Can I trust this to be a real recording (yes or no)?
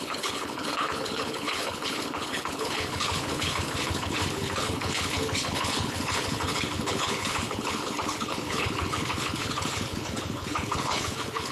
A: no